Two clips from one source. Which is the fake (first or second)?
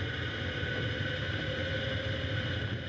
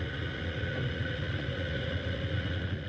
second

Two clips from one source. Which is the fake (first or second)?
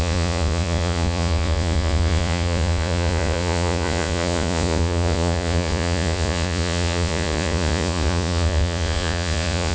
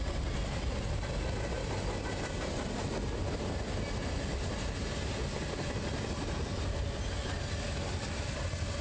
first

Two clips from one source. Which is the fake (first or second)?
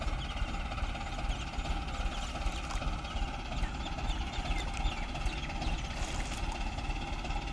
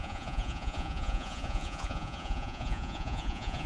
second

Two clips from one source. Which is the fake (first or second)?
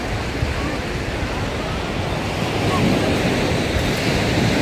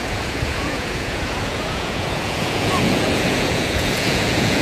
second